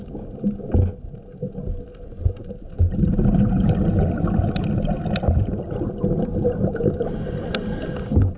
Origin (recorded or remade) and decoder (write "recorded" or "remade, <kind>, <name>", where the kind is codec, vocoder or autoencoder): recorded